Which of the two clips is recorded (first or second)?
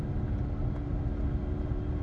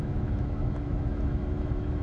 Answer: first